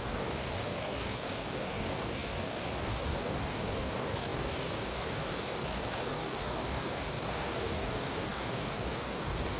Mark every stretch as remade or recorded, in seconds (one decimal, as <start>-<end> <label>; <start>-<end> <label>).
0.0-9.6 remade